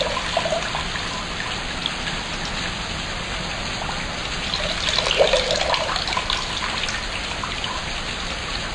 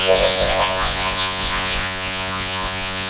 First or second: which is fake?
second